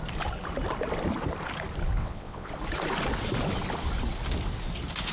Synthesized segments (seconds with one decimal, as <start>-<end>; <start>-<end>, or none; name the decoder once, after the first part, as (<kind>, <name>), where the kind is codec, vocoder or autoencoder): 2.0-2.5 (vocoder, WaveNeXt)